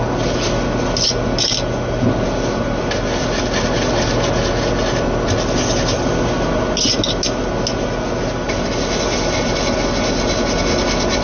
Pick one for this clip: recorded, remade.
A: recorded